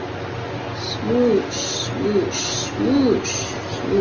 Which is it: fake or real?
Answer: real